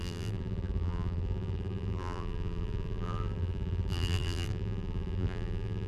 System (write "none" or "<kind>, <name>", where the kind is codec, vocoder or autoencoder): vocoder, BigVGAN v2